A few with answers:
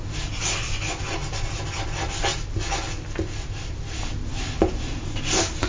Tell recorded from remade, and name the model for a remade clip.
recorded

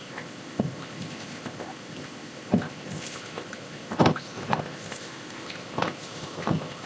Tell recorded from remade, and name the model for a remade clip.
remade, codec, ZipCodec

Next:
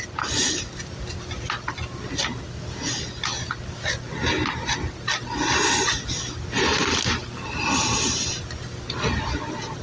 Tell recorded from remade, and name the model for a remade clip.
recorded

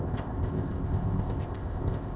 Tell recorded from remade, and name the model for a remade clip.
remade, codec, ZipCodec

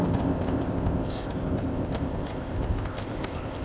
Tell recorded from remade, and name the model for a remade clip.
remade, codec, ZipCodec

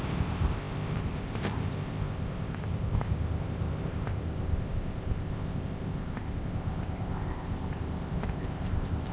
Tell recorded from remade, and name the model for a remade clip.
remade, codec, ZipCodec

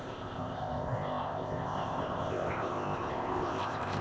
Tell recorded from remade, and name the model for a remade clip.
remade, codec, ZipCodec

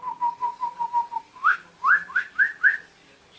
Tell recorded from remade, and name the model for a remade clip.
recorded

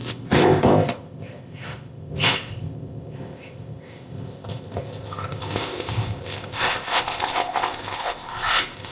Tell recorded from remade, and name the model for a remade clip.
remade, codec, ZipCodec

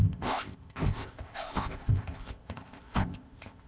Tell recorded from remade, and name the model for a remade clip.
remade, codec, ZipCodec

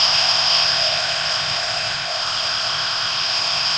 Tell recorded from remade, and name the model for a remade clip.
remade, codec, ZipCodec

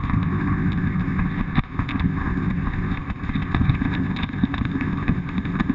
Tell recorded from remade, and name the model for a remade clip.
remade, codec, ZipCodec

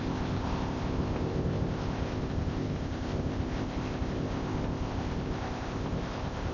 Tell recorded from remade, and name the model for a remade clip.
remade, codec, ZipCodec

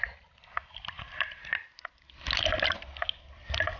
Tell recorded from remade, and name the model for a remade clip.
recorded